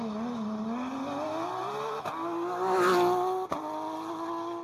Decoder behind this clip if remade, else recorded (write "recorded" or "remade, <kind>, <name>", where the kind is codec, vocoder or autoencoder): recorded